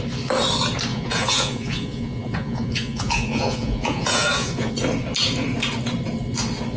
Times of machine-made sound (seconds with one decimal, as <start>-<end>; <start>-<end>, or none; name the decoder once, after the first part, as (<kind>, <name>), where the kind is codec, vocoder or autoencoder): 0.9-4.7 (vocoder, Vocos)